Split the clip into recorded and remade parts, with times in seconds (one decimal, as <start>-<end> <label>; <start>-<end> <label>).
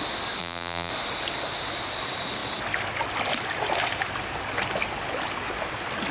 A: 0.0-0.4 recorded; 0.4-0.9 remade; 0.9-6.1 recorded